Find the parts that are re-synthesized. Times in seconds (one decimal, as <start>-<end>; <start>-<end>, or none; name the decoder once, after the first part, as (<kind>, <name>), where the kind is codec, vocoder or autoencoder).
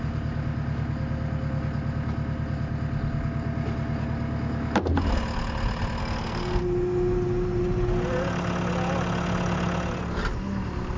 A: 6.0-6.6 (codec, SNAC)